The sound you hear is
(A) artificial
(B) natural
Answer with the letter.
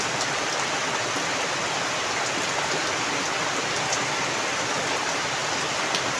B